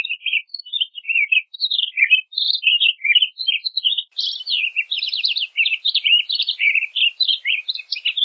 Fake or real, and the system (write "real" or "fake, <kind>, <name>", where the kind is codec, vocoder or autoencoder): fake, vocoder, BigVGAN v2